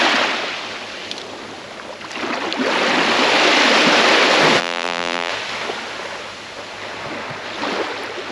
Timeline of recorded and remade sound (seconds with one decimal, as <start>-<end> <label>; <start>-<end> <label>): 0.0-4.6 recorded; 4.6-5.3 remade; 5.3-8.3 recorded